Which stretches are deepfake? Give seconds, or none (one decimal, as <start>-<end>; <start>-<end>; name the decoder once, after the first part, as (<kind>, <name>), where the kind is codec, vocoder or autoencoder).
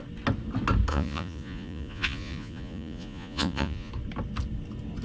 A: 0.9-3.9 (vocoder, Vocos)